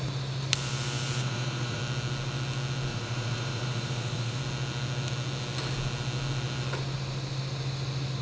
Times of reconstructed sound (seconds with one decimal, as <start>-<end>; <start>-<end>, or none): 1.2-1.8; 2.9-4.4

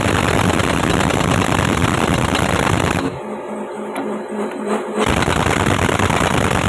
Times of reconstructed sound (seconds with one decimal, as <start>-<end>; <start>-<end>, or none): none

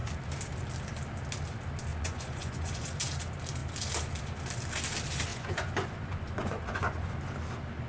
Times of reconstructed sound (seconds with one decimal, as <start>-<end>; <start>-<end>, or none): 1.9-3.0; 5.3-7.2

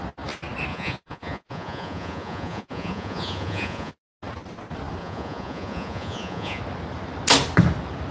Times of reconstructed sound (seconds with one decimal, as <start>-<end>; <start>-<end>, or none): 0.7-3.9; 5.0-6.6

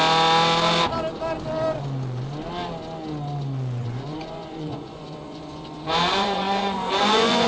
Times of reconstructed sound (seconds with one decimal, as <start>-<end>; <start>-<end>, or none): 3.8-7.5

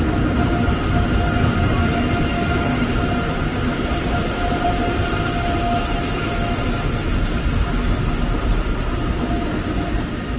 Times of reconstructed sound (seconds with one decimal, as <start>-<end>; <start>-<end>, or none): none

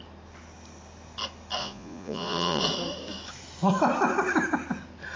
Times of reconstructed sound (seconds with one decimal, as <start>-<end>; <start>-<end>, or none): 1.6-2.6

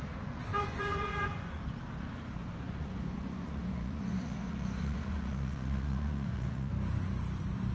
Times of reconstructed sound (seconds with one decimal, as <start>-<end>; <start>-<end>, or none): 0.5-1.6; 2.1-6.7